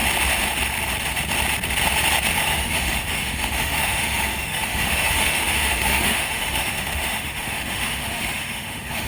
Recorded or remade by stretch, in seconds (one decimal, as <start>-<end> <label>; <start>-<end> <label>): 0.0-2.4 recorded; 2.4-9.1 remade